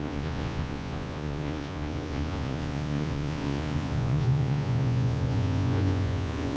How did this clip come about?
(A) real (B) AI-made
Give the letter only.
B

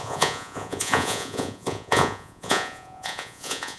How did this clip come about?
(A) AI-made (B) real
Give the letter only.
A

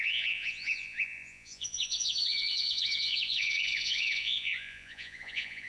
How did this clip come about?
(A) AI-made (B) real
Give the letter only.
A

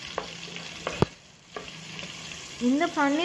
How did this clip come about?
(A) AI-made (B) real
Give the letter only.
B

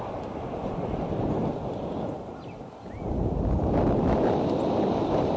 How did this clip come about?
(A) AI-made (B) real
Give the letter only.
B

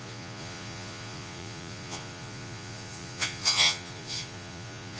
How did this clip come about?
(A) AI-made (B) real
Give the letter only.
A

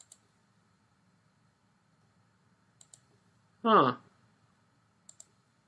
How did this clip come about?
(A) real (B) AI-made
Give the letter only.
A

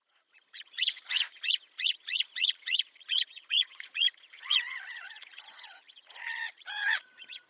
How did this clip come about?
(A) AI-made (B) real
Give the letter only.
A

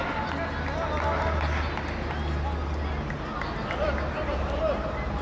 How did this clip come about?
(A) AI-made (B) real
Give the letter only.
B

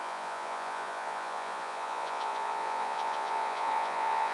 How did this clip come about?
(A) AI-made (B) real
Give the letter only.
A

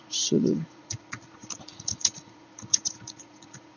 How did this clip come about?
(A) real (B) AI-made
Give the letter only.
B